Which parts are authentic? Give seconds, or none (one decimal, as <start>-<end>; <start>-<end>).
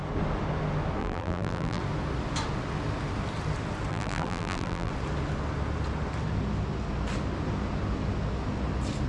0.0-1.0; 1.8-3.9; 4.9-9.1